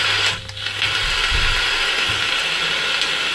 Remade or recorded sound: recorded